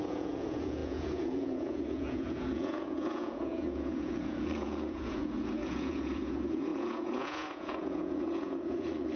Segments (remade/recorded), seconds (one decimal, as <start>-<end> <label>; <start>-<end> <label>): 0.0-9.2 remade